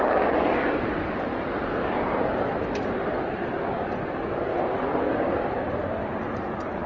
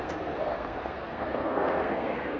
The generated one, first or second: second